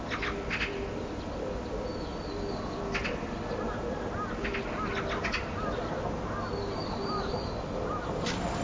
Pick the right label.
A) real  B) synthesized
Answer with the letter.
A